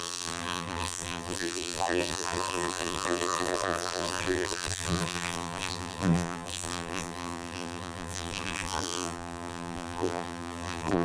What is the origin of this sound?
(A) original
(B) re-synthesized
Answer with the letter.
B